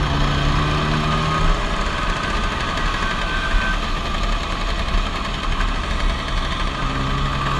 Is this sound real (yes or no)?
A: yes